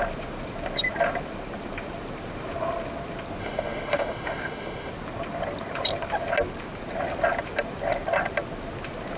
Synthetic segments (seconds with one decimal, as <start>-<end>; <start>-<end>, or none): 3.4-4.9

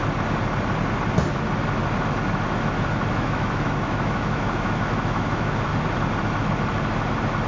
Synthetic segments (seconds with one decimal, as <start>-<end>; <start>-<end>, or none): 3.1-5.7